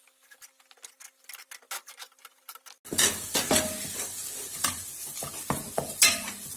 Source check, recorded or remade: recorded